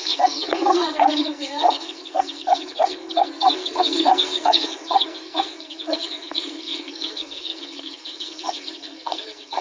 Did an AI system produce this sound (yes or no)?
yes